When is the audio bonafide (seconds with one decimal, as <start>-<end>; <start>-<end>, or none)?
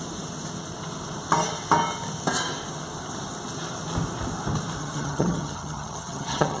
0.0-4.8